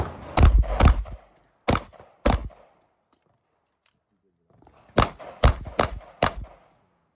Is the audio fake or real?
real